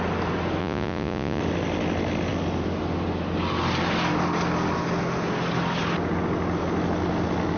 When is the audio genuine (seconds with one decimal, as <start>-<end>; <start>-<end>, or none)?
0.0-0.6; 1.4-7.6